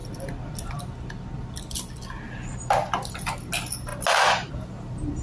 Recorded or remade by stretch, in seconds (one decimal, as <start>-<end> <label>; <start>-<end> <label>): 0.0-5.2 recorded